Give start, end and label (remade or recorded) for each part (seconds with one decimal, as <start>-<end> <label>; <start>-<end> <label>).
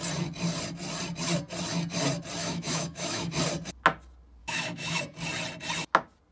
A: 0.0-2.4 recorded; 2.4-3.3 remade; 3.3-4.4 recorded; 4.4-5.0 remade; 5.0-6.3 recorded